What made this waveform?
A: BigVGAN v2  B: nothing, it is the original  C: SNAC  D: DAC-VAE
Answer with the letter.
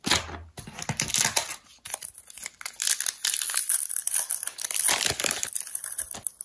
B